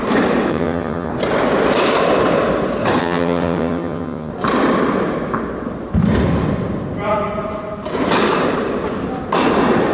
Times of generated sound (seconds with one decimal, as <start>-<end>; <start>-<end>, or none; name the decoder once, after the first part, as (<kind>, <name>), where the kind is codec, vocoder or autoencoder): 0.5-1.1 (vocoder, HiFi-GAN); 3.0-4.3